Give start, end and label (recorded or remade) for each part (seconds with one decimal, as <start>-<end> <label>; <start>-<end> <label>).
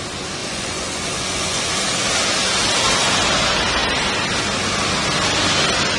0.0-0.4 recorded; 0.4-1.6 remade; 1.6-6.0 recorded